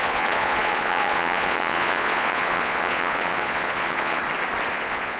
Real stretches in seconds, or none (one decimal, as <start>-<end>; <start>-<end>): 4.2-4.7